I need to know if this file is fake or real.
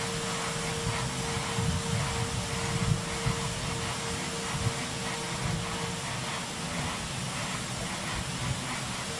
real